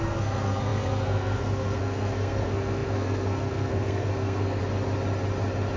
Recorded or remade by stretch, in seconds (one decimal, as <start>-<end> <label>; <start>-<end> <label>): 0.0-4.6 remade; 4.6-5.8 recorded